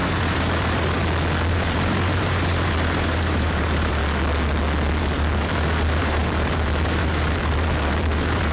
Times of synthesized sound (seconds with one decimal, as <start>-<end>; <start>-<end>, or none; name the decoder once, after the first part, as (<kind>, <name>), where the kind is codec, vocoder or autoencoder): 0.0-1.0 (vocoder, BigVGAN v2); 1.5-4.0; 5.0-8.5